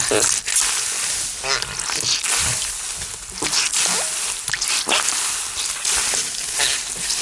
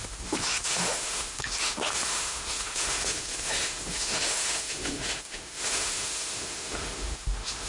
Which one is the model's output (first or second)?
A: second